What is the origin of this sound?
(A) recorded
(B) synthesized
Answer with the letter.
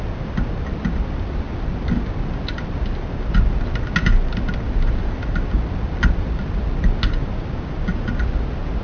A